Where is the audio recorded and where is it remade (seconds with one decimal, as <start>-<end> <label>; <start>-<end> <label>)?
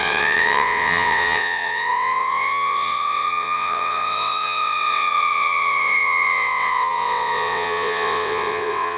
0.0-9.0 remade